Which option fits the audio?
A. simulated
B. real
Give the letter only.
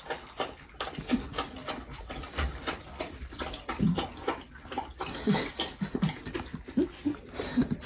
B